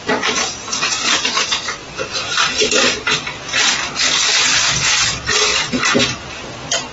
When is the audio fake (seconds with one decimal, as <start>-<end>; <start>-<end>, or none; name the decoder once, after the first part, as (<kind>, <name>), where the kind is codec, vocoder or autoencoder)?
none